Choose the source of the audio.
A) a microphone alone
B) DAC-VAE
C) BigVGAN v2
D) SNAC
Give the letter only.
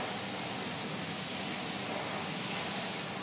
A